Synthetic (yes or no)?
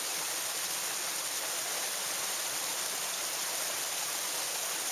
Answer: no